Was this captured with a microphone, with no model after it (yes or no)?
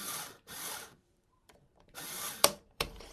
no